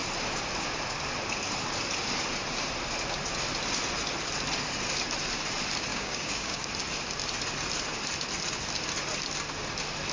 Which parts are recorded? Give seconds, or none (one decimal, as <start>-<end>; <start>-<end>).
0.0-5.9; 6.7-10.1